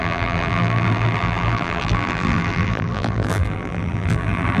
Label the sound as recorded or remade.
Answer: remade